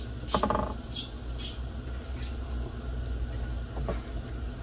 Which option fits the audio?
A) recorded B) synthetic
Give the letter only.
A